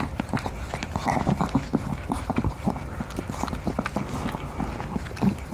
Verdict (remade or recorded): remade